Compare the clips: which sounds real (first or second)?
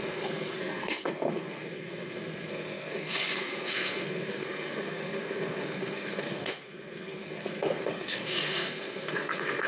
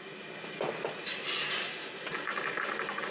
second